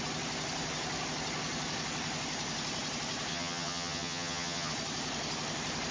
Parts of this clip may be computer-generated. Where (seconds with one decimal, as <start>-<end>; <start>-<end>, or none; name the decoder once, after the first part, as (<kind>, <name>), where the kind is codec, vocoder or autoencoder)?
3.3-4.7 (vocoder, HiFi-GAN)